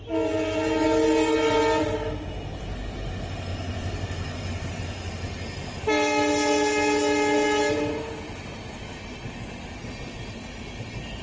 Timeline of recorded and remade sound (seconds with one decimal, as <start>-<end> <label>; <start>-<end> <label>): 0.0-11.2 recorded